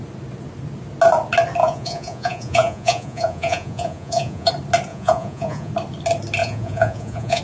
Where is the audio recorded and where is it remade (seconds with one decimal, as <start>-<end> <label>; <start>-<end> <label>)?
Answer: 0.0-1.6 recorded; 1.6-4.5 remade; 4.5-4.9 recorded; 4.9-5.7 remade; 5.7-6.4 recorded; 6.4-7.4 remade